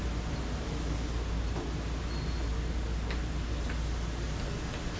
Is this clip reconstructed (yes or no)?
no